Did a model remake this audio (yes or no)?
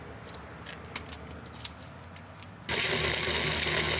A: no